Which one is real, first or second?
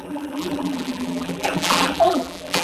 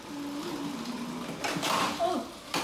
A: second